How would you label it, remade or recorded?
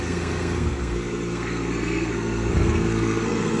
remade